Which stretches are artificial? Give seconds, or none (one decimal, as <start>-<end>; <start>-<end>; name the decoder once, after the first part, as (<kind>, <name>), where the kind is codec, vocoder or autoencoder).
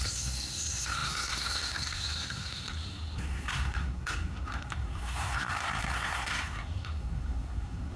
0.0-8.0 (codec, SNAC)